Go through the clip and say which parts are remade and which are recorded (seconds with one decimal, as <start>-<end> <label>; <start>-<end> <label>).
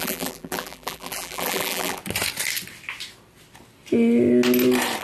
0.0-2.0 remade; 2.0-5.0 recorded